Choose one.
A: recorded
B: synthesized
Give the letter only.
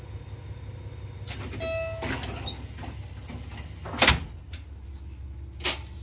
A